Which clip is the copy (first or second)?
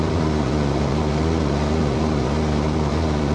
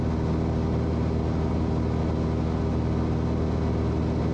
first